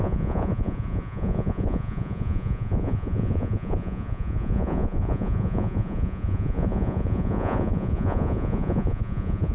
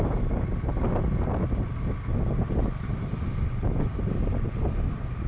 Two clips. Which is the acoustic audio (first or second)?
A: second